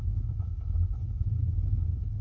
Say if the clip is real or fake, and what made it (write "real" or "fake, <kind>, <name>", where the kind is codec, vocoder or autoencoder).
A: fake, codec, HILCodec